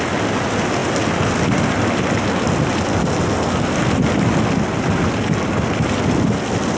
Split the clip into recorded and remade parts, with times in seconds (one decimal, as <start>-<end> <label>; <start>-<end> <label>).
0.0-6.8 recorded